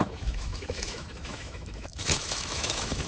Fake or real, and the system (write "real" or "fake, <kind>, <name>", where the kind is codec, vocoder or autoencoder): fake, autoencoder, DAC-VAE